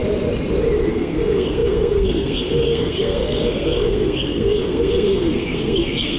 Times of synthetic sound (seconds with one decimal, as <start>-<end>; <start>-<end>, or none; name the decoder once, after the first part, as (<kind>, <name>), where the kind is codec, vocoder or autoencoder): 0.9-6.2 (codec, SNAC)